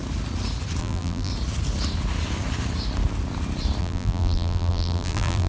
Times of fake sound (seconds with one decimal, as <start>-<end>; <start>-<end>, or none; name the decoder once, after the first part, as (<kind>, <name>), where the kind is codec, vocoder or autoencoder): 0.8-1.3 (vocoder, BigVGAN v2); 3.8-5.5